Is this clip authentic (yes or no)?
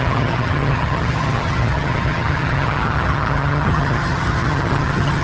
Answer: no